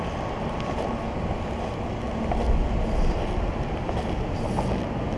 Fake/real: real